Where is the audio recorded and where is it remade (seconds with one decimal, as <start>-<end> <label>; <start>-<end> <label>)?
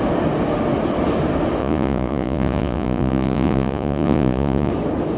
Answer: 0.0-1.6 recorded; 1.6-4.7 remade; 4.7-5.2 recorded